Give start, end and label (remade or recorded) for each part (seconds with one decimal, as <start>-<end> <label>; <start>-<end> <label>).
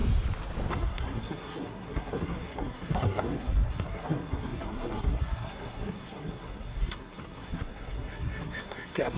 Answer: 0.0-0.7 recorded; 0.7-9.2 remade